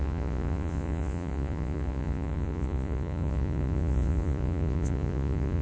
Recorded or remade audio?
remade